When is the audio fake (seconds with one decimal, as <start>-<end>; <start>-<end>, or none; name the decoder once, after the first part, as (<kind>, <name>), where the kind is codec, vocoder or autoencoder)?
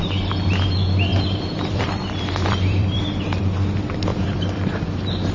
1.1-3.4 (vocoder, BigVGAN v2); 4.1-5.3